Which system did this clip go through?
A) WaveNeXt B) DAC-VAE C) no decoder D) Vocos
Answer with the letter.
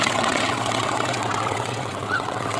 A